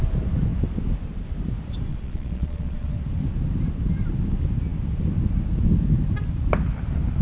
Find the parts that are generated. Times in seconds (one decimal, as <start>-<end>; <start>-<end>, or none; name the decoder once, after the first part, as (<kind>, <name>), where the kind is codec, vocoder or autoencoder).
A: 1.9-2.9 (vocoder, Vocos)